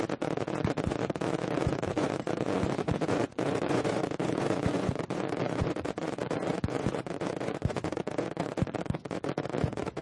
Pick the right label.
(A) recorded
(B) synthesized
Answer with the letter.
B